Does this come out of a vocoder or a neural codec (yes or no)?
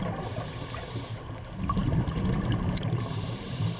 yes